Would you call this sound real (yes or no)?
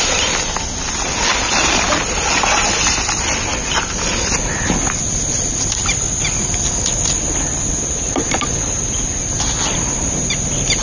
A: yes